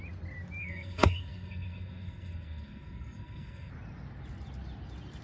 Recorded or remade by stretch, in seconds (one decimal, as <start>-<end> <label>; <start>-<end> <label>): 0.0-0.6 recorded; 0.6-3.7 remade; 3.7-5.2 recorded